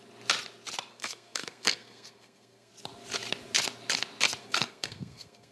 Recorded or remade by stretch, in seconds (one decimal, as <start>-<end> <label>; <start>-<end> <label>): 0.0-0.9 recorded; 0.9-2.7 remade; 2.7-4.4 recorded; 4.4-5.5 remade